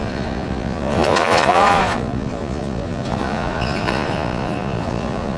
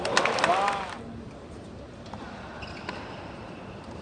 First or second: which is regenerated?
first